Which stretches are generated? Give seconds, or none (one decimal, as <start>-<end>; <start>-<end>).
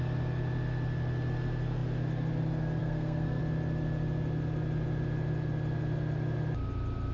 2.8-3.4